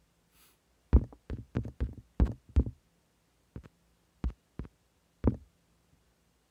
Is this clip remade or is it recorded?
recorded